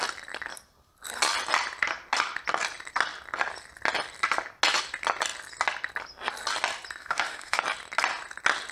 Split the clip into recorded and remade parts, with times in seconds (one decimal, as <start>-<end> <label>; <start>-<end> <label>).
0.0-7.0 recorded; 7.0-7.6 remade; 7.6-8.7 recorded